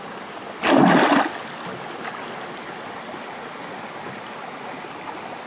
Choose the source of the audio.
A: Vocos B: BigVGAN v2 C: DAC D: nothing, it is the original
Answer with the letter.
D